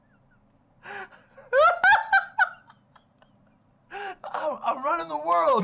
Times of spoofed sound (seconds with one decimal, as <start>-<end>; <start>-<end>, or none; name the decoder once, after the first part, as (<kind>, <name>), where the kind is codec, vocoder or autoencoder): 2.6-5.6 (vocoder, BigVGAN v2)

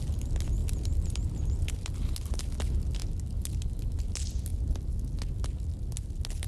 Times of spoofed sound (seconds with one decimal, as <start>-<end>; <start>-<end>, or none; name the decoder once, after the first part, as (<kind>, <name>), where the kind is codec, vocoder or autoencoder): none

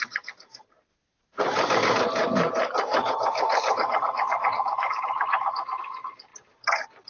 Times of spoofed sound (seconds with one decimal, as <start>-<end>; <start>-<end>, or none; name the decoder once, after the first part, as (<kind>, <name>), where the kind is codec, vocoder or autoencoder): none

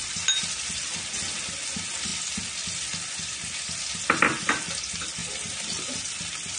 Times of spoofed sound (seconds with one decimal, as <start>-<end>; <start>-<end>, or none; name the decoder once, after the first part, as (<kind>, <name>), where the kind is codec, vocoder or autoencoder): none

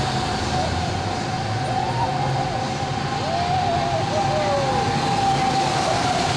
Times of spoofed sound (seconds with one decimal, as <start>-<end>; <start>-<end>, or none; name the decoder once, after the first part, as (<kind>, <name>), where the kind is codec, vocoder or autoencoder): none

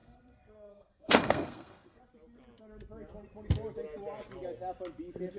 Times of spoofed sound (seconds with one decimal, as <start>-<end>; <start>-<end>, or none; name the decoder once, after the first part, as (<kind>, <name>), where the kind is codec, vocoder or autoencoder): 0.0-2.0 (codec, SNAC)

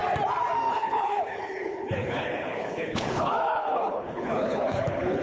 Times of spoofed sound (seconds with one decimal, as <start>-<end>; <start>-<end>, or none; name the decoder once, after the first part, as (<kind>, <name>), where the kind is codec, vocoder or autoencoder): 0.7-5.2 (codec, HILCodec)